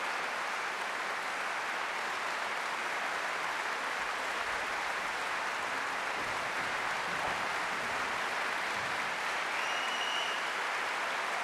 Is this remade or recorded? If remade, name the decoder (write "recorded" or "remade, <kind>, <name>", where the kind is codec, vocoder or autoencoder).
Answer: recorded